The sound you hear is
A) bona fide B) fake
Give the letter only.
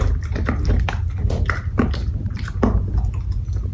A